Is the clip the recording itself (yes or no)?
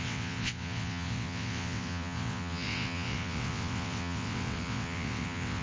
no